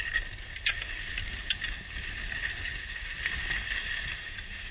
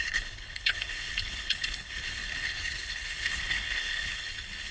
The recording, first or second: first